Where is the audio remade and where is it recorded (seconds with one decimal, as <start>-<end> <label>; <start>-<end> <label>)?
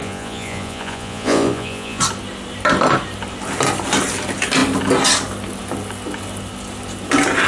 0.0-2.0 remade; 2.0-7.5 recorded